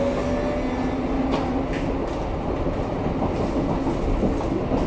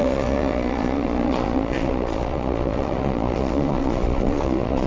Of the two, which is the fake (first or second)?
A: second